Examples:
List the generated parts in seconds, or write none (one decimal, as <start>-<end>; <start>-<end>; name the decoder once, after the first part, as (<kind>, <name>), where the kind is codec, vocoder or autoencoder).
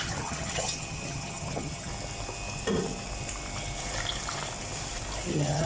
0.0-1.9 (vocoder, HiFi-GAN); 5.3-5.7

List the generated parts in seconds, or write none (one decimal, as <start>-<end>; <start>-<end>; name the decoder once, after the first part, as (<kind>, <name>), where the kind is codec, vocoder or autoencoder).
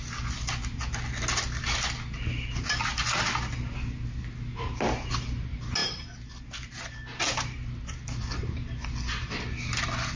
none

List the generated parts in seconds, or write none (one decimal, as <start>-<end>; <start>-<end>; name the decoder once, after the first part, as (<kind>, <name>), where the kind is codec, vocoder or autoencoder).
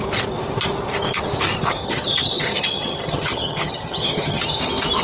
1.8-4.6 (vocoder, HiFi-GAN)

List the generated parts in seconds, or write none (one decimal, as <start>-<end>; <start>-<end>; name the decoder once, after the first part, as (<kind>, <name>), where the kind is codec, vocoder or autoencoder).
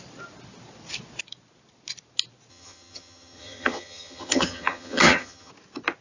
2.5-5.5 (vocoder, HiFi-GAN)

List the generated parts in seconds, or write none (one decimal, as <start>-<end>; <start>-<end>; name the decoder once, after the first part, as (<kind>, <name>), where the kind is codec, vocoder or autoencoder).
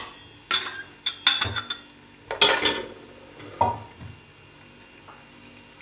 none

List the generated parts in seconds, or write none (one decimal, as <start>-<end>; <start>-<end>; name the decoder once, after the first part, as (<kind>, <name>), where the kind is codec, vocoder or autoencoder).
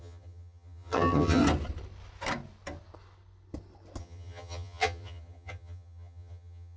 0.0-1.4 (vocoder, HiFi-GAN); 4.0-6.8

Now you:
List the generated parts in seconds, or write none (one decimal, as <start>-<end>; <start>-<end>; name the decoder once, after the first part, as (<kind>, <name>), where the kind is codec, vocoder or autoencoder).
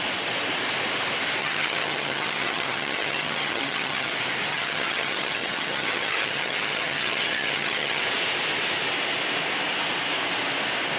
1.4-4.1 (vocoder, HiFi-GAN); 4.5-8.0